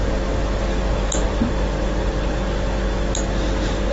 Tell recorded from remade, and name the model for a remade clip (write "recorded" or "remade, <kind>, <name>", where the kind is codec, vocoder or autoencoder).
recorded